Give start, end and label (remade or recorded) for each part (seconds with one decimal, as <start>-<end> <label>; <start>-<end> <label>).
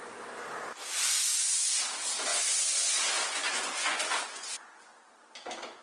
0.0-1.3 recorded; 1.3-1.8 remade; 1.8-2.3 recorded; 2.3-5.0 remade; 5.0-5.8 recorded